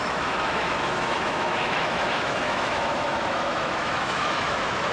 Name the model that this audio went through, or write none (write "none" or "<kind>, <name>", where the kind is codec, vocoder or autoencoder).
autoencoder, DAC-VAE